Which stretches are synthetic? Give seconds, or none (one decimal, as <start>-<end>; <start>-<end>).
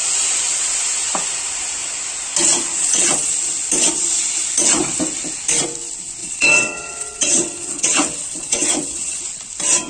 2.8-3.3; 6.2-9.2